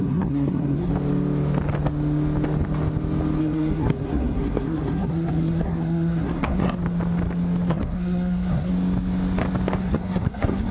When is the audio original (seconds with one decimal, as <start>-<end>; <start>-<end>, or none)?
0.9-3.4; 6.8-7.7; 8.7-9.8